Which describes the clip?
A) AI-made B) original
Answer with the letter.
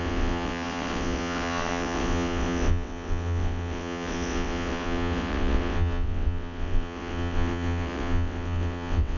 A